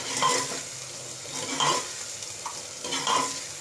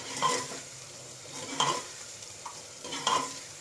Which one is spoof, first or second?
second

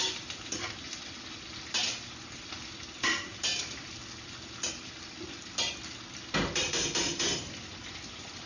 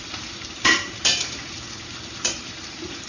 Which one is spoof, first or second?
second